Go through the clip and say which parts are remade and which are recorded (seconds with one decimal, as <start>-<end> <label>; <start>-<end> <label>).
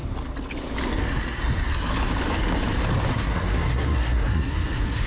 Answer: 0.0-3.1 recorded; 3.1-5.1 remade